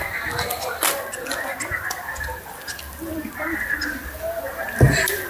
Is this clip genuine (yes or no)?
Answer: yes